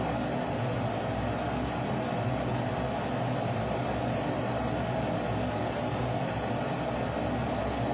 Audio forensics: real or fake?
real